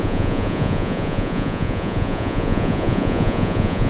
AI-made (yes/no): yes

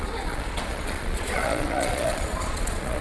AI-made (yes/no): yes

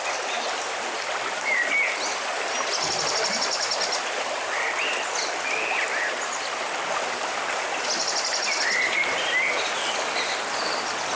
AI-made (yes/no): no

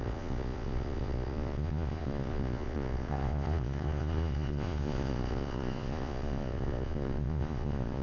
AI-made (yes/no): yes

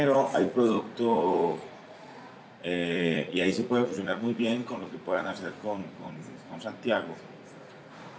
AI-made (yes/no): yes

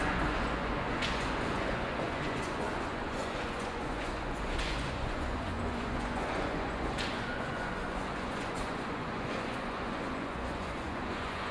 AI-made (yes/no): yes